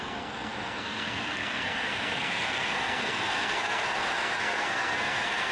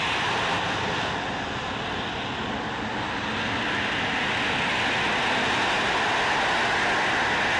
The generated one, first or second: first